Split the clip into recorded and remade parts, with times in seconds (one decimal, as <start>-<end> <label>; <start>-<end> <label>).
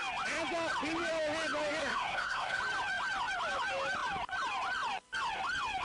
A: 0.0-1.8 recorded; 1.8-2.6 remade; 2.6-5.8 recorded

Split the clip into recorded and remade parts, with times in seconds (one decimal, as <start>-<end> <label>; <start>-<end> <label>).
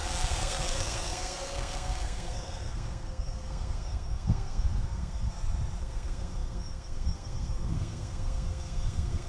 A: 0.0-5.3 remade; 5.3-5.8 recorded; 5.8-9.3 remade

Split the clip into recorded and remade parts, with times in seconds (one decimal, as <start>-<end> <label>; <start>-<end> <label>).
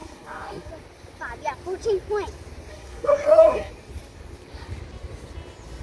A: 0.0-0.7 remade; 0.7-2.7 recorded; 2.7-3.7 remade; 3.7-5.8 recorded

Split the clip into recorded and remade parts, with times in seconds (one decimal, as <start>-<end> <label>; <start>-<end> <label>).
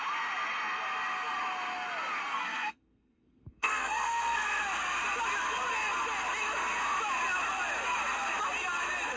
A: 0.0-2.3 recorded; 2.3-4.6 remade; 4.6-9.2 recorded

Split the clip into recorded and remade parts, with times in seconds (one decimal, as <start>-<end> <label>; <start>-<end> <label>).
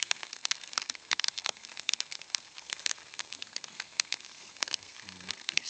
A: 0.0-5.7 remade